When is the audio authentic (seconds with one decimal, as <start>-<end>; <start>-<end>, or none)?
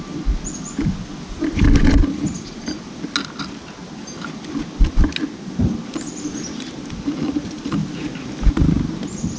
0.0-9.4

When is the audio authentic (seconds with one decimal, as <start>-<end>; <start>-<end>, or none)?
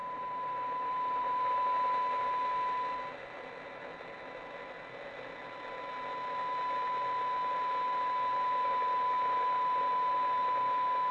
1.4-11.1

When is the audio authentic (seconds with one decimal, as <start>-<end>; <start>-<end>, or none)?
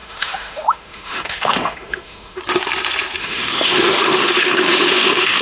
2.4-3.2